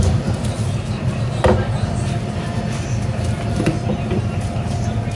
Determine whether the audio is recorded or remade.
recorded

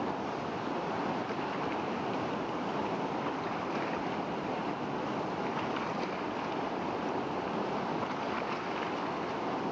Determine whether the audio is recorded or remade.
recorded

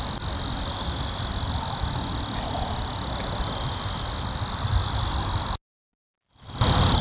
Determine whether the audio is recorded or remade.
recorded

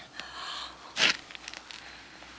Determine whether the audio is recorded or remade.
recorded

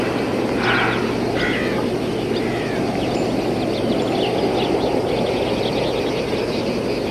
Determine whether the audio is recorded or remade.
recorded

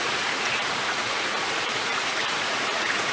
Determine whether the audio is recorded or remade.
remade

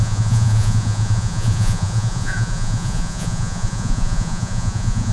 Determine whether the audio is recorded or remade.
remade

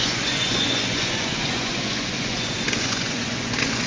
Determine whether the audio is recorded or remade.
remade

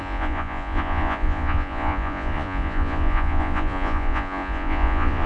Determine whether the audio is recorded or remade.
remade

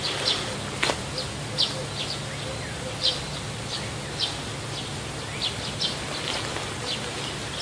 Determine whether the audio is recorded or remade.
recorded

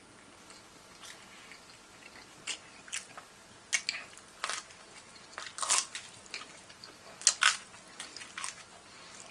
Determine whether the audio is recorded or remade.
recorded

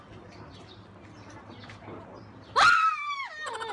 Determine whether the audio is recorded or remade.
recorded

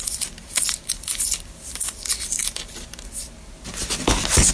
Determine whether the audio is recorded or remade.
recorded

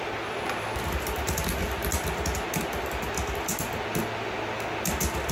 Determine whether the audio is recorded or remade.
recorded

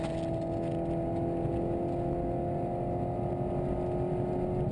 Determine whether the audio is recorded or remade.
recorded